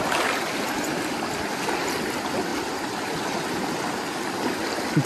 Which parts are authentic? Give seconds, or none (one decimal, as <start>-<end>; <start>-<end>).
0.0-5.1